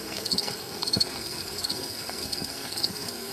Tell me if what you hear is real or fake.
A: fake